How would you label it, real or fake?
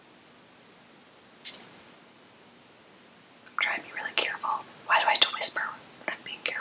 real